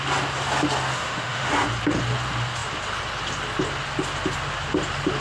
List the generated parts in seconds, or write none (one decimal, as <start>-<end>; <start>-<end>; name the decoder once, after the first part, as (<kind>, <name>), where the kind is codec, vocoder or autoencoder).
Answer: 0.9-1.5 (autoencoder, DAC-VAE)

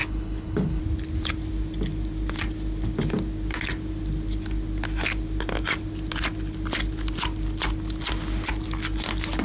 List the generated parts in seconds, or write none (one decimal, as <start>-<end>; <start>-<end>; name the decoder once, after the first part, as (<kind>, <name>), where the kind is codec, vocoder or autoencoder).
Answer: 0.0-0.8 (codec, HILCodec)

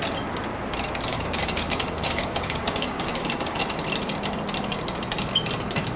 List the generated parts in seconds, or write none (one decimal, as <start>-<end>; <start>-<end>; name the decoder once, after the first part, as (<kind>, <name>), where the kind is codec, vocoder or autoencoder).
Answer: 1.1-3.6 (codec, DAC)

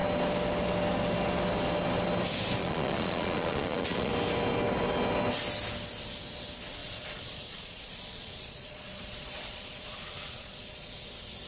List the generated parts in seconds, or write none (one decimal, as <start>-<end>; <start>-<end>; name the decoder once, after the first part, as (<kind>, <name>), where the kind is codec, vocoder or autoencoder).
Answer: 2.6-4.1 (vocoder, Vocos); 6.8-11.1

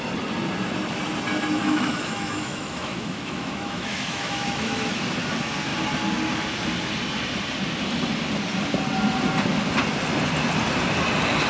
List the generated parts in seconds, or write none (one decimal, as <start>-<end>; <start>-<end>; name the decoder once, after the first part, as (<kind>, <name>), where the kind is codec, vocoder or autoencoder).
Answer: 1.6-5.0 (autoencoder, DAC-VAE)

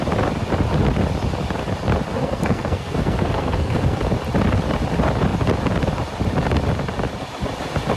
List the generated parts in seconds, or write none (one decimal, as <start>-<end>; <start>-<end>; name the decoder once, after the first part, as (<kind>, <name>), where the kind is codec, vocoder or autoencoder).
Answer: 2.1-4.0 (codec, SNAC)

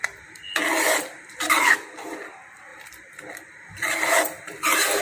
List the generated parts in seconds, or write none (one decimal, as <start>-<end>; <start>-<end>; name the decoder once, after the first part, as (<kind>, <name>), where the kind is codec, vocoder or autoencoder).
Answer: none

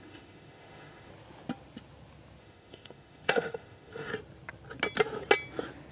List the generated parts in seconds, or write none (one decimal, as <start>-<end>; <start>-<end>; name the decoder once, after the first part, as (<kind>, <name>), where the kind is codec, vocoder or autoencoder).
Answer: 0.0-1.1 (autoencoder, DAC-VAE); 2.4-4.1